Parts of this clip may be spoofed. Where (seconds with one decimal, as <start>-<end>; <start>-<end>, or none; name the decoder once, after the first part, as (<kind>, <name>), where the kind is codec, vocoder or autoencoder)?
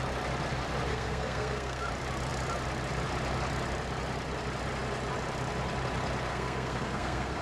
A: 0.9-1.9 (codec, SNAC); 6.3-7.4